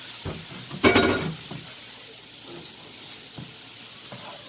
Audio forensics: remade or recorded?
recorded